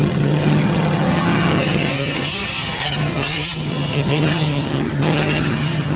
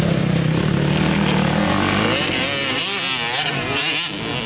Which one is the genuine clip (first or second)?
second